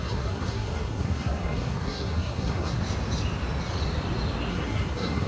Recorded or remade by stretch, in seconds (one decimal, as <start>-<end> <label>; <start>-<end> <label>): 0.0-2.8 remade; 2.8-4.5 recorded; 4.5-5.3 remade